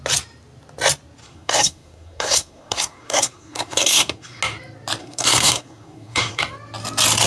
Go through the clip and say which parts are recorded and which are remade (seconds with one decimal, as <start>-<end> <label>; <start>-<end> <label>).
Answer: 0.0-1.2 recorded; 1.2-4.4 remade; 4.4-5.0 recorded; 5.0-6.4 remade; 6.4-7.3 recorded